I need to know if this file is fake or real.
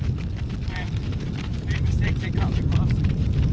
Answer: real